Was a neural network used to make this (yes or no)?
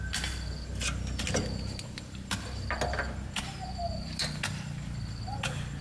no